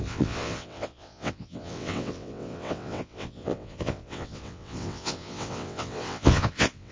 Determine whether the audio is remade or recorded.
remade